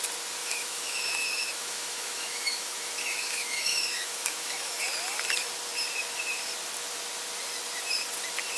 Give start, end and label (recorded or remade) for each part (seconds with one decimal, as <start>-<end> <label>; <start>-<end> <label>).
0.0-0.4 recorded; 0.4-4.8 remade; 4.8-8.6 recorded